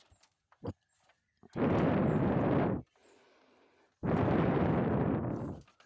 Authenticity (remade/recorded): remade